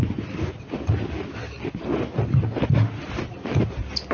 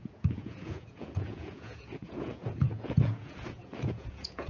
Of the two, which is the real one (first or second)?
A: first